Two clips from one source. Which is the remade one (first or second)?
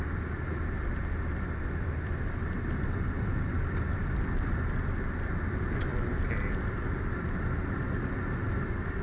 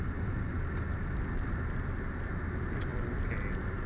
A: first